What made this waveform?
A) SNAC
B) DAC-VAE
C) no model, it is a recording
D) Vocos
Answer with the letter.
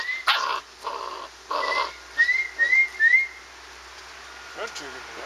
C